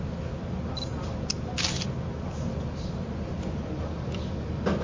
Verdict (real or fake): real